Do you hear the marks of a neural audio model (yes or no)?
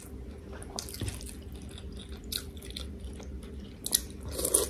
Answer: no